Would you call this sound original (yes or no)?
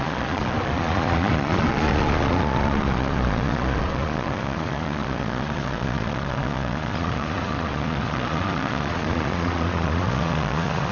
no